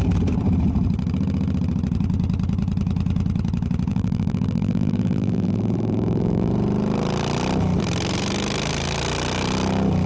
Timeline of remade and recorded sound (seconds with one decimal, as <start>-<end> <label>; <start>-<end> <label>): 0.0-3.9 recorded; 3.9-6.5 remade; 6.5-10.1 recorded